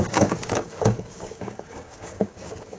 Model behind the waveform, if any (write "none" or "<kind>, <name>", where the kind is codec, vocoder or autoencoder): codec, DAC